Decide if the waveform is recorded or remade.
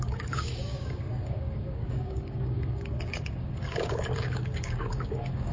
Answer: remade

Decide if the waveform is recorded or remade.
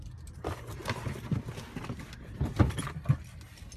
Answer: recorded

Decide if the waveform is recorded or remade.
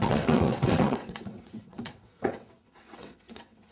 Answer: remade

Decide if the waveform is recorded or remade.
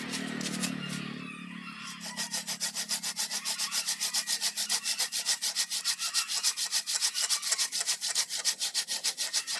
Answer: recorded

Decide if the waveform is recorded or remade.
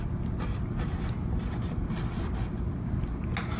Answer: recorded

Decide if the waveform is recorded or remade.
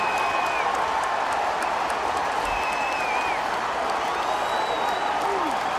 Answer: recorded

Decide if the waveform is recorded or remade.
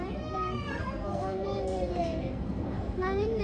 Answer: remade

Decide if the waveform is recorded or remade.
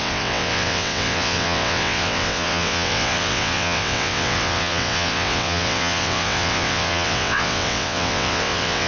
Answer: remade